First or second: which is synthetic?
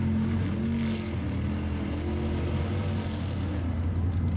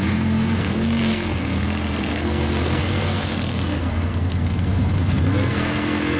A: second